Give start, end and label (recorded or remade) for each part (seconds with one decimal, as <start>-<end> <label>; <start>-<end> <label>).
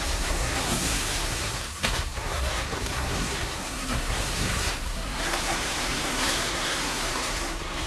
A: 0.0-7.9 remade